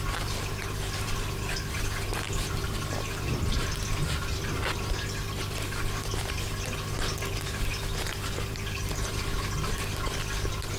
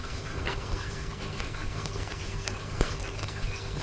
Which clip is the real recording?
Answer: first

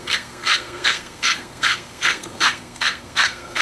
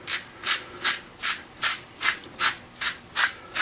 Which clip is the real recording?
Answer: second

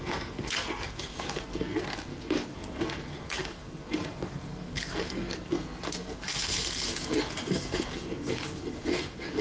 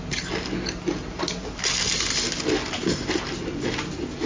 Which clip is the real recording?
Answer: second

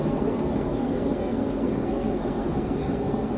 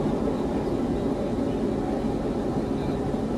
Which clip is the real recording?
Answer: second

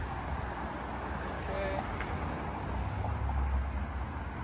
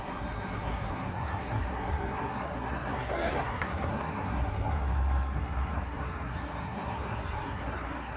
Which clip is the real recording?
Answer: first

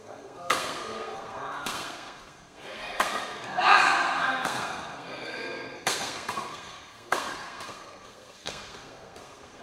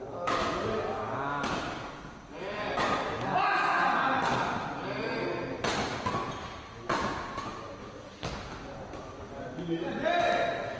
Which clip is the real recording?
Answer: second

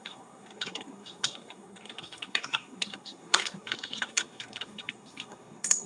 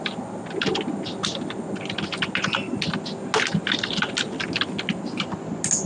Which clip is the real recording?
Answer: second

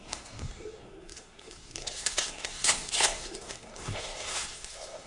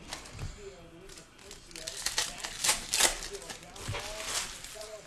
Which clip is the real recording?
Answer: second